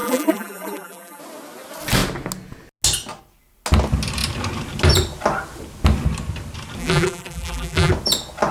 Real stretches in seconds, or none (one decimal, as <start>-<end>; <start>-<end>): 1.2-6.8; 7.9-8.5